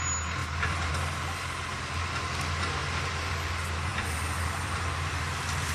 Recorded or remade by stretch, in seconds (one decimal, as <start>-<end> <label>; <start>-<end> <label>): 0.0-0.4 recorded; 0.4-0.9 remade; 0.9-2.8 recorded; 2.8-3.3 remade; 3.3-3.9 recorded; 3.9-5.7 remade